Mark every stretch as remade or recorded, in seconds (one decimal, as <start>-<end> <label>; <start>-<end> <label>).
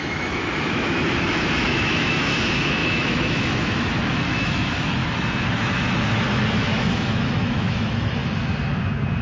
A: 0.0-5.0 remade; 5.0-6.5 recorded; 6.5-8.2 remade; 8.2-9.2 recorded